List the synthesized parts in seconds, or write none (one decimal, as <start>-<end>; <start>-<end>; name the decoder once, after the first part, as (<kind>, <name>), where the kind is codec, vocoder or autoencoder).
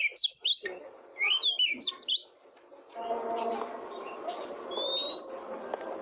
none